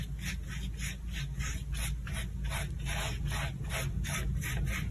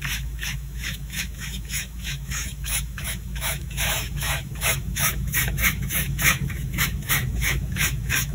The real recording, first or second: first